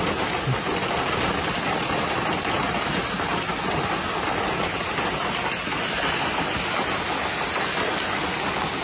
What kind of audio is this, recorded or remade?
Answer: recorded